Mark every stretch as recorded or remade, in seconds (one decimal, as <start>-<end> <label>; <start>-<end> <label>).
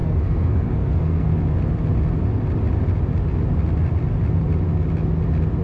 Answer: 0.0-1.4 remade; 1.4-5.6 recorded